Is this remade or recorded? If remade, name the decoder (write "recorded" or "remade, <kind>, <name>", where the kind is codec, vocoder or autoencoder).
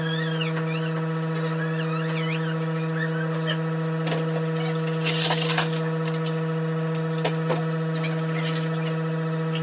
recorded